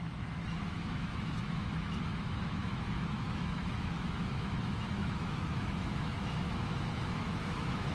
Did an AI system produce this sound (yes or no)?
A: yes